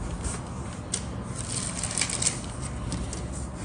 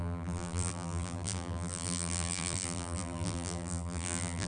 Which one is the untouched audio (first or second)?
first